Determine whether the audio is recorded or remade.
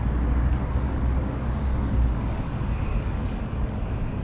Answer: remade